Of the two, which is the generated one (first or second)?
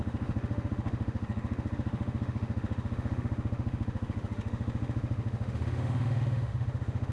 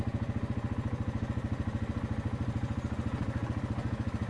first